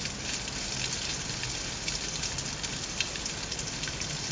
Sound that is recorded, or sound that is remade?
recorded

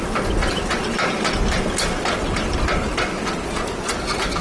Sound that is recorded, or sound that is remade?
recorded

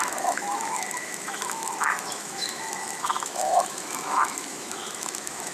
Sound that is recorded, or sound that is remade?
remade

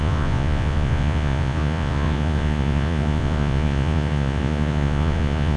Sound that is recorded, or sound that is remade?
remade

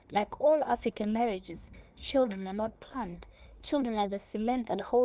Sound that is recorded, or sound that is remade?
remade